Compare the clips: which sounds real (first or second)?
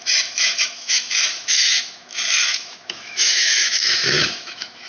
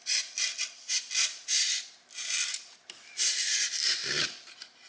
second